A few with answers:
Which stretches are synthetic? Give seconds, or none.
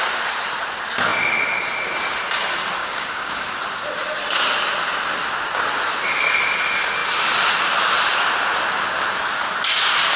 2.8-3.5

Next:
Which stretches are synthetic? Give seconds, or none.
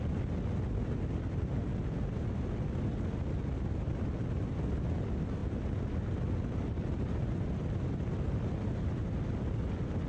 none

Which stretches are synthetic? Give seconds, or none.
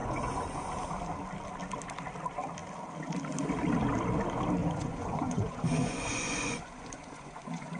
0.0-0.7; 4.6-7.8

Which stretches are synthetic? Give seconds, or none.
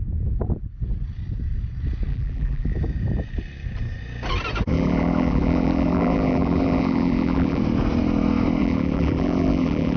2.1-2.7; 4.7-7.6; 8.6-10.0